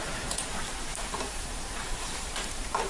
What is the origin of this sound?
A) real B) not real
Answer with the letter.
B